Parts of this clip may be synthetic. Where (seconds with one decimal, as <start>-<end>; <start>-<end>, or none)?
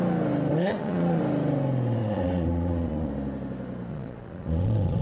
0.7-1.2; 2.0-3.1; 3.9-5.0